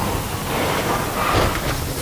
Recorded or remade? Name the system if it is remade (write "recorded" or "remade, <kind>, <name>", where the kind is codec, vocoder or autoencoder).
recorded